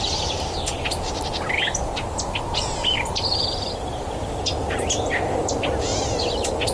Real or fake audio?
real